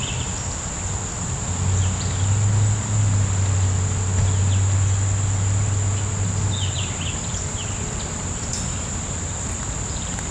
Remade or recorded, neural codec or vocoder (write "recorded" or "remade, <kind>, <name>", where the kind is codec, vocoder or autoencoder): recorded